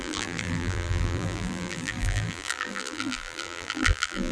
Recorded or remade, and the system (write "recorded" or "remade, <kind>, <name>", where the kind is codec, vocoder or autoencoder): remade, vocoder, BigVGAN v2